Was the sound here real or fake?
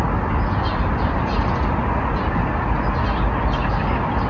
real